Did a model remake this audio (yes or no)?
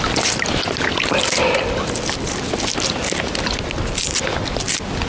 no